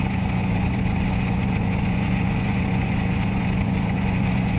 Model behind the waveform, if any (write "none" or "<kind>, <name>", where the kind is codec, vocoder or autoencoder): vocoder, Vocos